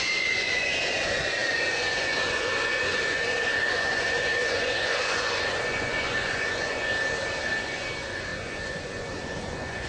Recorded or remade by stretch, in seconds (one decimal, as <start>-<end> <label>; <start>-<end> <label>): 0.0-6.9 remade; 6.9-7.6 recorded; 7.6-9.9 remade